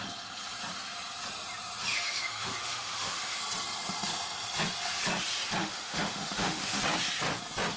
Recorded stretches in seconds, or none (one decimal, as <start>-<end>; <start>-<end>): 0.0-1.9; 3.4-5.6; 6.8-7.8